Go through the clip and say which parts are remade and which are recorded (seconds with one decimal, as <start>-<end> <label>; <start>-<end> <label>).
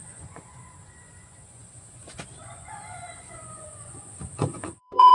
0.0-5.1 remade